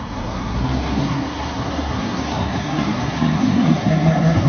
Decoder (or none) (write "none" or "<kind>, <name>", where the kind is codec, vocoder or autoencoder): codec, SNAC